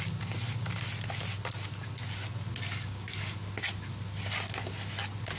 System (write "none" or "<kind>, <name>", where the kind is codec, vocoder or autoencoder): none